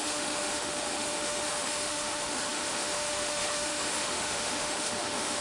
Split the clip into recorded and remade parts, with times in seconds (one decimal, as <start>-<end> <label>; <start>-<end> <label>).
0.0-5.4 remade